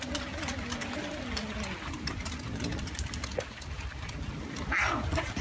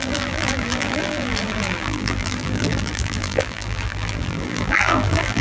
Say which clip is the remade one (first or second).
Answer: second